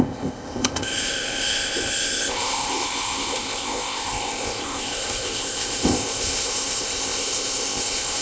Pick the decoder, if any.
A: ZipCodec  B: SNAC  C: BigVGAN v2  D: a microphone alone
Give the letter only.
A